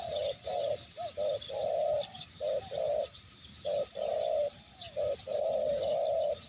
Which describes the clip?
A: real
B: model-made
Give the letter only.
A